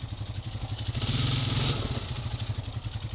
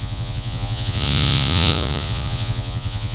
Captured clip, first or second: first